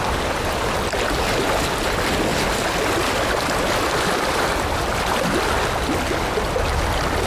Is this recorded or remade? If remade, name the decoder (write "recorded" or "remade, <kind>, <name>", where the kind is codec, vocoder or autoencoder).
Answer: recorded